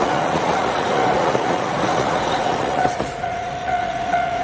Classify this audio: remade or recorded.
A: remade